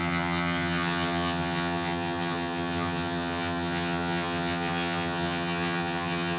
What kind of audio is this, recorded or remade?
remade